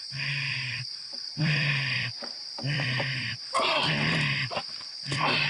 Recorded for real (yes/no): no